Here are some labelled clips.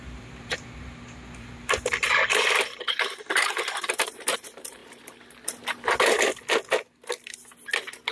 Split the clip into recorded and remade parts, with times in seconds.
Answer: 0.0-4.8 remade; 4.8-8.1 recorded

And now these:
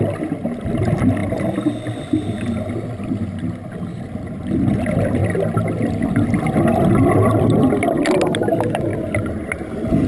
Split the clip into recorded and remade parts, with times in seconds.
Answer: 0.0-10.1 recorded

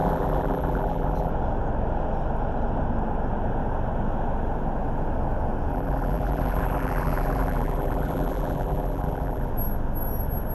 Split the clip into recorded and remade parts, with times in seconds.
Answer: 0.0-1.3 remade; 1.3-5.7 recorded; 5.7-9.5 remade; 9.5-10.5 recorded

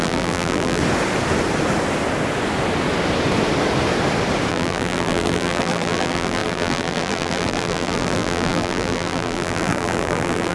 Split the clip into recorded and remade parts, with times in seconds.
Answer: 0.0-0.8 remade; 0.8-4.5 recorded; 4.5-10.5 remade

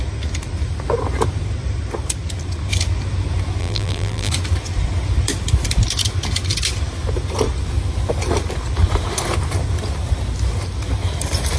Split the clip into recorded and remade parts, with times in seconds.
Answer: 0.0-3.6 recorded; 3.6-4.3 remade; 4.3-11.6 recorded

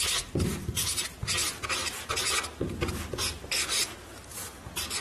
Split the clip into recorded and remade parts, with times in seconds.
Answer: 0.0-1.8 recorded; 1.8-4.6 remade; 4.6-5.0 recorded